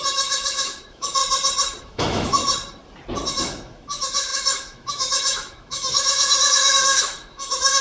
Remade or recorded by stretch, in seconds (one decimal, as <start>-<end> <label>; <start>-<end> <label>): 0.0-1.2 remade; 1.2-1.8 recorded; 1.8-2.4 remade; 2.4-3.3 recorded; 3.3-7.8 remade